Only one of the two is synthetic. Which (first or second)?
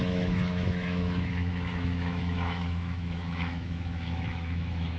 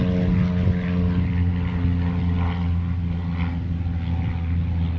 first